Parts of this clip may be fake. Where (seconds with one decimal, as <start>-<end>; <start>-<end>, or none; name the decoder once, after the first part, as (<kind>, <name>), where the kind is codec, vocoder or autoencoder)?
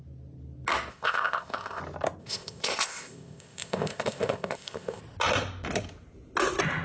0.9-1.8 (codec, ZipCodec); 2.2-5.0